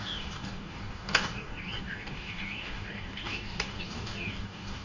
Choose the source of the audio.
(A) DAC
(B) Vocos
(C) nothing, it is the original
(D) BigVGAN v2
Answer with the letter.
A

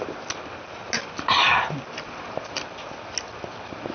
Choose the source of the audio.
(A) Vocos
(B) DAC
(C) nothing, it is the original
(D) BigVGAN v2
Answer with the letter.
C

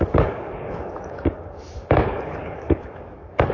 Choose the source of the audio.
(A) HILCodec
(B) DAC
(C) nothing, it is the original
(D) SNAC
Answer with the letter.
B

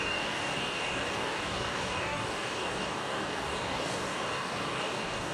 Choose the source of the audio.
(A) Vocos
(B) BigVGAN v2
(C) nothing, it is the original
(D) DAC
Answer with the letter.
D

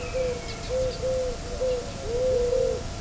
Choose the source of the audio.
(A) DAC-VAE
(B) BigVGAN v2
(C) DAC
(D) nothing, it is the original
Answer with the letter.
D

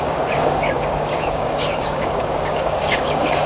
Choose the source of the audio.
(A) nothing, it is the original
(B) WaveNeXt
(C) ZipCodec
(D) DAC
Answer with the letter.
D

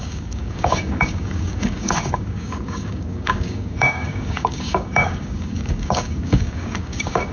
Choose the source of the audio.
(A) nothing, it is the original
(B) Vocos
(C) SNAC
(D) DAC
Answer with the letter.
D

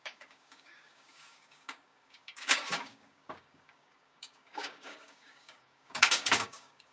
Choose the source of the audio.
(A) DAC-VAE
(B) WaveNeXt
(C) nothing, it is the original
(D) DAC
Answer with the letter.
D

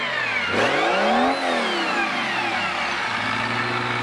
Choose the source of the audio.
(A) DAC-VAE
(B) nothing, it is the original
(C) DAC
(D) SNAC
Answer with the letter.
B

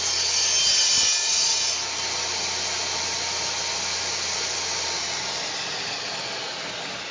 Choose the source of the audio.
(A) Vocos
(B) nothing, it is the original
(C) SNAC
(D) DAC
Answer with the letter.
B